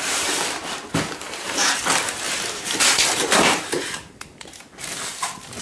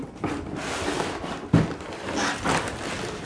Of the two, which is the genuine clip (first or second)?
second